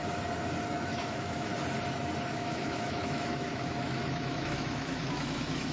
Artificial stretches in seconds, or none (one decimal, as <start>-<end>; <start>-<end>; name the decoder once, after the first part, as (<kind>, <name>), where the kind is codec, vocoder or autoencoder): 0.7-1.5 (autoencoder, DAC-VAE); 2.3-5.7